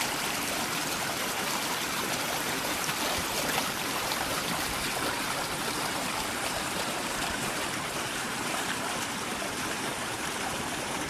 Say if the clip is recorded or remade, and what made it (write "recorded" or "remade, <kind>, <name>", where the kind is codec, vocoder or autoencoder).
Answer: remade, vocoder, BigVGAN v2